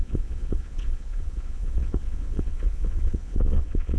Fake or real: fake